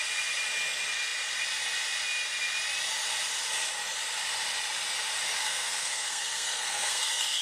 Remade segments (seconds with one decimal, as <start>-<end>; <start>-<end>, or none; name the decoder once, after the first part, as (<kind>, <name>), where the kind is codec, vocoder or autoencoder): 5.4-7.4 (codec, SNAC)